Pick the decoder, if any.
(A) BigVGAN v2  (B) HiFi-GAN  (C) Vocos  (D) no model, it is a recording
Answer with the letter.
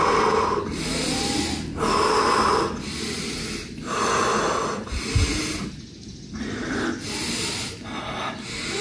D